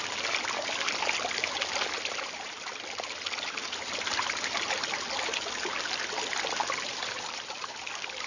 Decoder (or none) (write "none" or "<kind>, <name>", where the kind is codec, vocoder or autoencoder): vocoder, BigVGAN v2